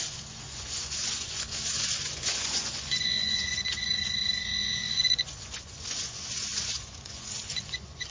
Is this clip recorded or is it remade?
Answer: remade